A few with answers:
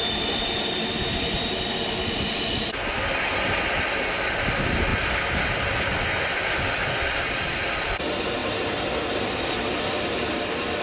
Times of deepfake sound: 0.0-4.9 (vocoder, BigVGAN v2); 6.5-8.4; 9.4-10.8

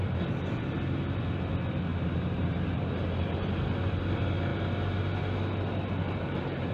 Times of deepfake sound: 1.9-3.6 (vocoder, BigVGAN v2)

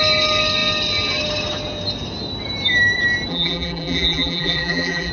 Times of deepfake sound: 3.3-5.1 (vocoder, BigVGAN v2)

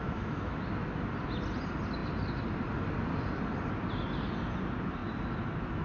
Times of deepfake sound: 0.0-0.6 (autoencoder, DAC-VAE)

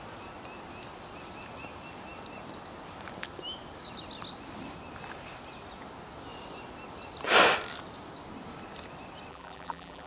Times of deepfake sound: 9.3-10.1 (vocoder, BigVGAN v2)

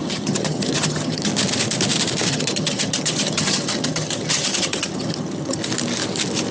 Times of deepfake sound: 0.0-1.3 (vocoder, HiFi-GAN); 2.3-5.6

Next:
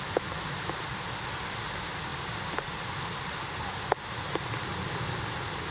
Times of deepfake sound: none

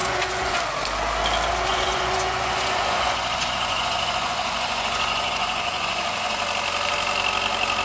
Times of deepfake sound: 0.0-0.6 (vocoder, Vocos); 1.7-6.4